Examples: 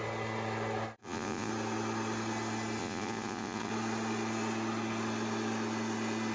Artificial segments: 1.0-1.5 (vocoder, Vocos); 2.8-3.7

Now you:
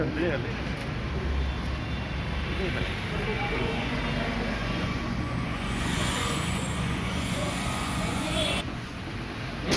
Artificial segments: 3.3-4.0 (vocoder, Vocos); 4.6-9.0